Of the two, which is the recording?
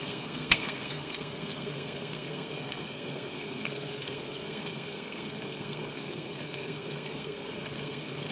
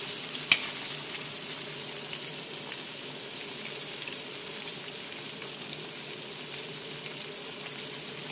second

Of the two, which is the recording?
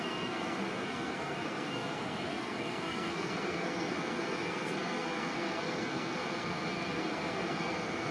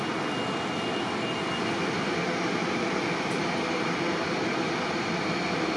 second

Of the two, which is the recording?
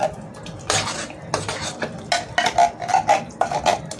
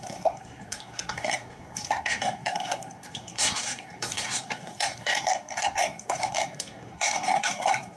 first